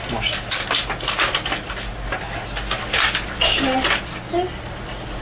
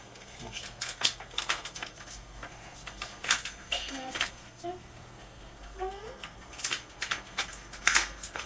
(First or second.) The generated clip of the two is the second